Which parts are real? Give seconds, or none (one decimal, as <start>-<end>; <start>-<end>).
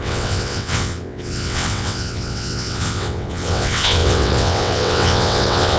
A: none